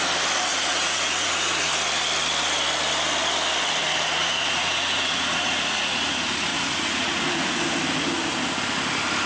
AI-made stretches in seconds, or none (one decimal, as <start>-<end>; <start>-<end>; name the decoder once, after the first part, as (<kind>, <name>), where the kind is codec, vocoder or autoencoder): 0.5-1.7 (vocoder, Vocos); 4.2-6.1; 6.5-7.6